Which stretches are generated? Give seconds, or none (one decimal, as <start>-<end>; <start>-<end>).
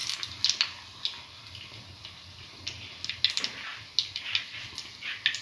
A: none